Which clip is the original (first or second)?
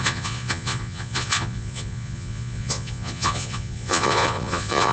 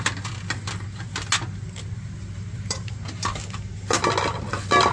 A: second